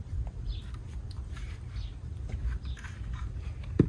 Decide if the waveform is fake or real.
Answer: real